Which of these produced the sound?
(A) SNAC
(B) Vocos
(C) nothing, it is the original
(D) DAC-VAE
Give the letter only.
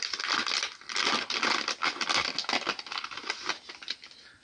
C